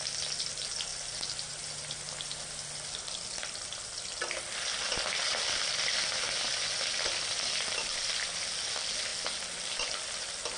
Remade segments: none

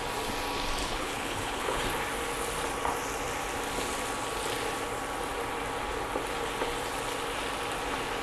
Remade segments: 0.8-1.8 (codec, HILCodec)

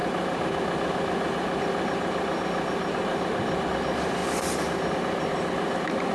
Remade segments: none

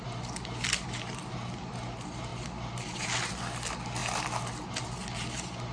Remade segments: none

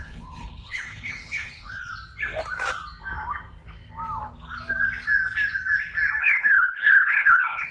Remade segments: 0.0-1.9 (codec, HILCodec); 6.2-7.7